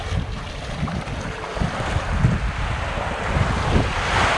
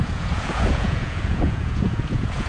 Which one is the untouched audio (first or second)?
first